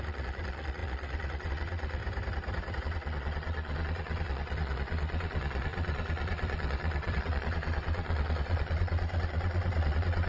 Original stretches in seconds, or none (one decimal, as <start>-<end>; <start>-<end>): 2.0-2.8